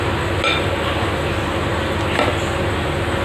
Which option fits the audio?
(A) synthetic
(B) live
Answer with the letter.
B